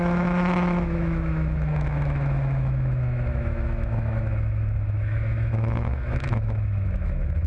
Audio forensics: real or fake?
fake